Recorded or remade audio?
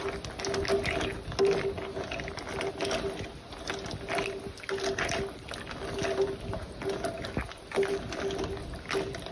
recorded